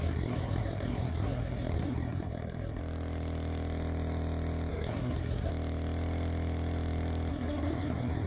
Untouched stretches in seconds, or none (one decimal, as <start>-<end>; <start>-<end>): 2.8-4.7; 5.5-7.3